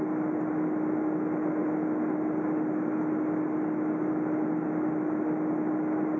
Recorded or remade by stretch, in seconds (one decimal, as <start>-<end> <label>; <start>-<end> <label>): 0.0-6.2 recorded